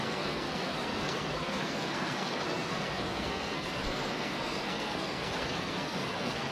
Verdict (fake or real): fake